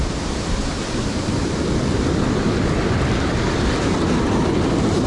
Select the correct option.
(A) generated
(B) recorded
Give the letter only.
A